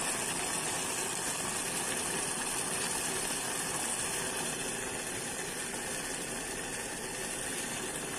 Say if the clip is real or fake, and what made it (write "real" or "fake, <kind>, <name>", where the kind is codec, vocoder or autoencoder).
real